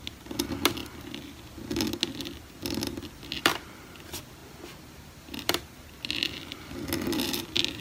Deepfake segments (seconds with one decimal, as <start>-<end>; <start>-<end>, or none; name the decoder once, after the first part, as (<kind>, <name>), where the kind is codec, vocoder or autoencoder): none